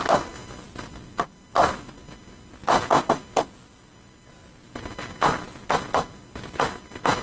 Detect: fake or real real